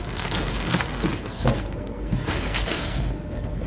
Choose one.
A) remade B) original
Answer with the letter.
A